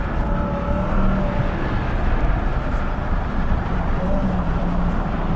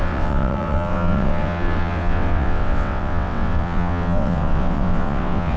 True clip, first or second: first